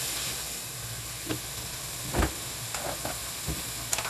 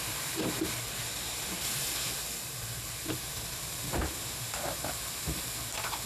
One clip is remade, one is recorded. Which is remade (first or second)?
second